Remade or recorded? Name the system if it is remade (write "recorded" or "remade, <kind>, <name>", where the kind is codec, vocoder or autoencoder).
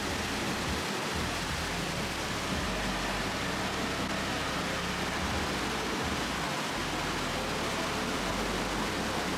recorded